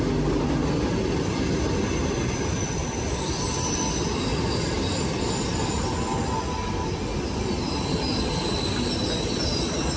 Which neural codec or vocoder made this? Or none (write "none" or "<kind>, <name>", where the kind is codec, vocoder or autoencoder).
none